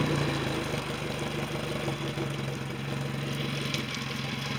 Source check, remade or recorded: recorded